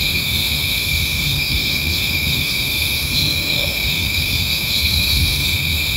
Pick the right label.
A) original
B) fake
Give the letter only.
B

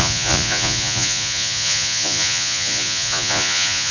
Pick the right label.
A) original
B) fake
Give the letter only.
B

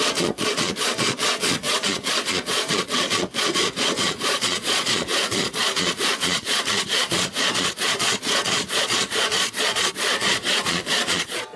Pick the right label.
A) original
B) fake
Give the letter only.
B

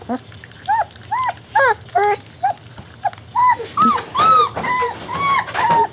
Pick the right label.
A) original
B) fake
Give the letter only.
A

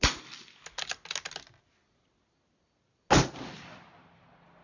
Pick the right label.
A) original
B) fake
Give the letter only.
A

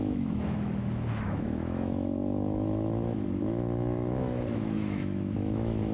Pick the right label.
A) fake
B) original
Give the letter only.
A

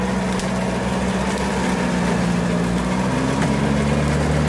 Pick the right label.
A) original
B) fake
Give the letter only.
A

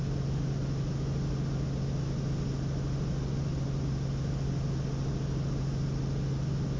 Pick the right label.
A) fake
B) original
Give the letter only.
B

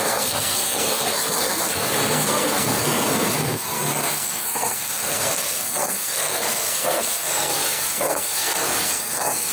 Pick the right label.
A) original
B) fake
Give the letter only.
B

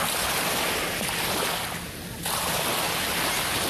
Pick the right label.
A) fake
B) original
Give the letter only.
B